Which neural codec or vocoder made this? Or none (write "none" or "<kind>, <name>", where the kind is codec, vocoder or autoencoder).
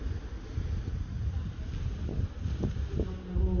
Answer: none